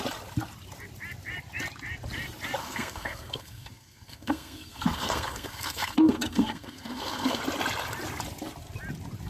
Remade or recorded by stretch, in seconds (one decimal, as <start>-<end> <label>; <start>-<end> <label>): 0.0-2.6 recorded; 2.6-7.4 remade; 7.4-9.3 recorded